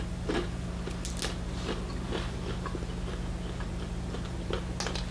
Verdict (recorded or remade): recorded